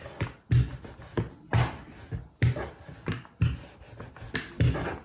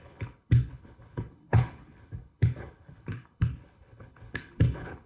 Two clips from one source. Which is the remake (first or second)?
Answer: second